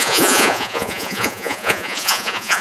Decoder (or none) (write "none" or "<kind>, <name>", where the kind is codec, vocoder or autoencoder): vocoder, Vocos